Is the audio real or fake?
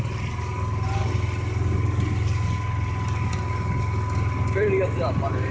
real